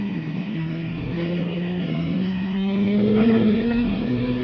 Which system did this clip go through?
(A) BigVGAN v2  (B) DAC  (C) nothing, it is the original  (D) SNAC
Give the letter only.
D